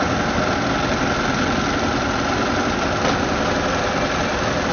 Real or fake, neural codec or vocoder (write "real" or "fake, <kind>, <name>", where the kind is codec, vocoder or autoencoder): real